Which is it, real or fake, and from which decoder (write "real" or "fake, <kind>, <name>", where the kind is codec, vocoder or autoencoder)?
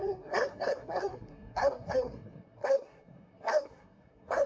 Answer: fake, codec, SNAC